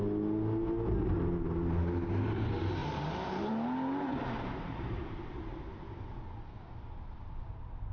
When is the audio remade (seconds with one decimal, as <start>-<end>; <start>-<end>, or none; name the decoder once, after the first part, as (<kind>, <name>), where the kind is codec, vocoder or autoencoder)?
2.8-3.5 (vocoder, BigVGAN v2); 4.1-5.4